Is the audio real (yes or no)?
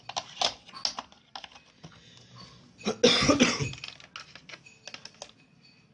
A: yes